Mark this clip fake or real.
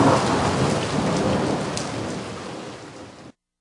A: real